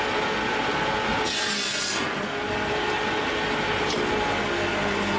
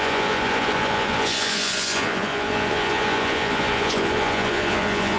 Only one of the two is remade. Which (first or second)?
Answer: second